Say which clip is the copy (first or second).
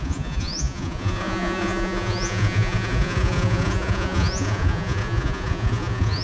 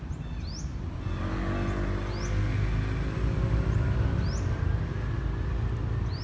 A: first